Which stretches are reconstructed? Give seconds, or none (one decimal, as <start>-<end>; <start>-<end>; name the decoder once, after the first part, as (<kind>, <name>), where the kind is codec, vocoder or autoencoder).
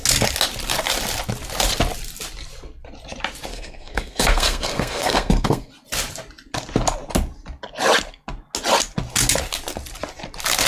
3.5-5.7 (codec, SNAC)